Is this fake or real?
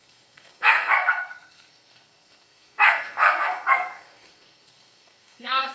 fake